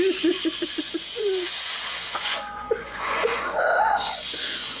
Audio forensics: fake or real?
fake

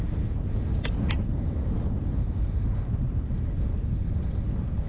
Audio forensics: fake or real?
fake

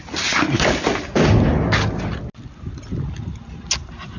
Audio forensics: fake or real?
real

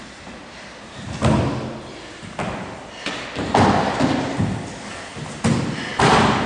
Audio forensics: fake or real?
real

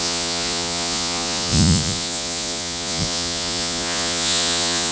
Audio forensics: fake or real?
fake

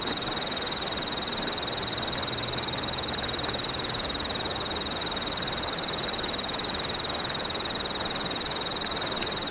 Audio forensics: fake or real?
fake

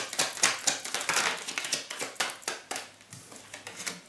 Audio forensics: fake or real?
real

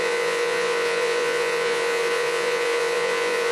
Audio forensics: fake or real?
fake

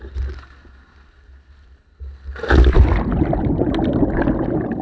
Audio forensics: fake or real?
real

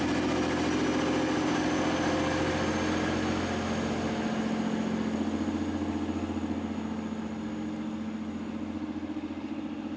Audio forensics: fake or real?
real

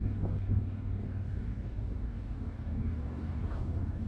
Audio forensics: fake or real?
fake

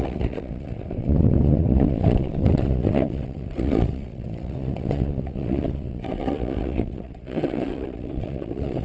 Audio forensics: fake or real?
fake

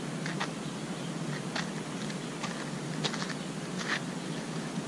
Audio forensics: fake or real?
real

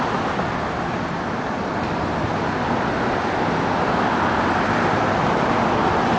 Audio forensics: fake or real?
real